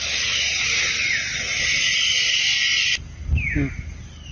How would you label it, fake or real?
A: real